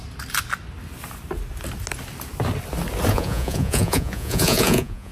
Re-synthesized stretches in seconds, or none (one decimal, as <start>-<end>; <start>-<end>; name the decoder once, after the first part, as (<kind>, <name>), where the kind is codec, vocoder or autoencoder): 3.1-5.1 (vocoder, Vocos)

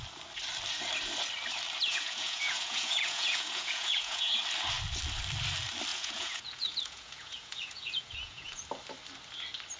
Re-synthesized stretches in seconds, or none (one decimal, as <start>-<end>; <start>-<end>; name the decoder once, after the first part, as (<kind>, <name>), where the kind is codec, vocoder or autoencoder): 1.9-4.3 (vocoder, Vocos); 5.9-8.6

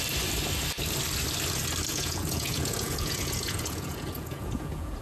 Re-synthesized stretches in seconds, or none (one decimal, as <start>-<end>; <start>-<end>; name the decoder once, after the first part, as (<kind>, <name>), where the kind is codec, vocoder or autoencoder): 1.9-5.0 (vocoder, Vocos)